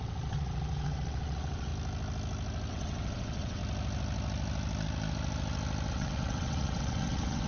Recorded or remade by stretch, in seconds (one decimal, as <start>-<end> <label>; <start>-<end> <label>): 0.0-1.7 remade; 1.7-2.7 recorded; 2.7-3.6 remade; 3.6-5.9 recorded; 5.9-7.5 remade